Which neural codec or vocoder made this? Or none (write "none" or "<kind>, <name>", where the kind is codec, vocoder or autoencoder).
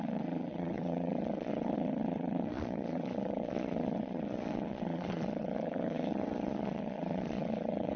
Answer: vocoder, Vocos